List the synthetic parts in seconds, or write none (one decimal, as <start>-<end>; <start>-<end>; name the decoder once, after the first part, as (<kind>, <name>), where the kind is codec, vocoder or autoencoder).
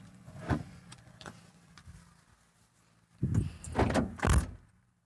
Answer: 0.0-1.8 (vocoder, Vocos)